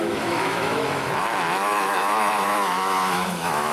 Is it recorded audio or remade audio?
remade